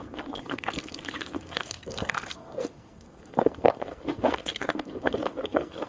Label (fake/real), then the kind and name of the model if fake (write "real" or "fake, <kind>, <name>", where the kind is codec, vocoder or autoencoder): fake, codec, SNAC